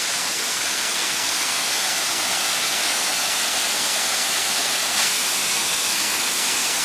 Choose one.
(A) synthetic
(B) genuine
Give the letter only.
A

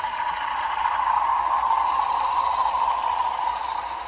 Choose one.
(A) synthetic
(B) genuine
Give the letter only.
B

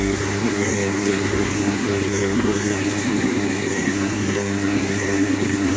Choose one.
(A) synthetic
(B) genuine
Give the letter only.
A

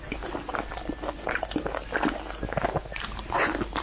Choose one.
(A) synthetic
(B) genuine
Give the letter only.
B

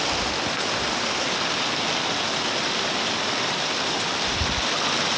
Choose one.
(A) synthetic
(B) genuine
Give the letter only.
B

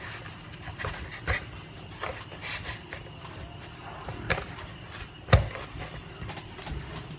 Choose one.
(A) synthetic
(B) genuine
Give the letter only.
B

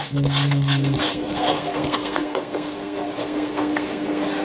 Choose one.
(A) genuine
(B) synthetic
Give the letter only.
B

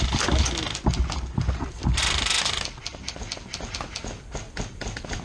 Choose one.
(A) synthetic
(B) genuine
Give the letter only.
B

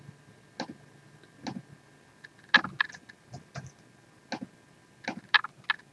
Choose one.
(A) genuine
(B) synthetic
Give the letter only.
A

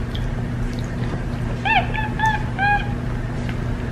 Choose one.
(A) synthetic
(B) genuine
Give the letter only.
B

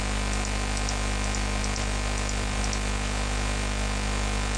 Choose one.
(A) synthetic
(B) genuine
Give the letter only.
B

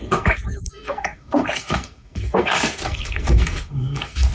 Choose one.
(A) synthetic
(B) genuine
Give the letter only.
A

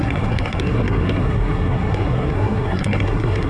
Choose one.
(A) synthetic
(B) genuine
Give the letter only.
A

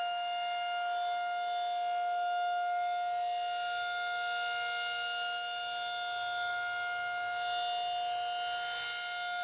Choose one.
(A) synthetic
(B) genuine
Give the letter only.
B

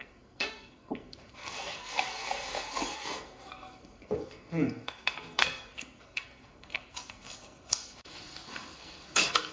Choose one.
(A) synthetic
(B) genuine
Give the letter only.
A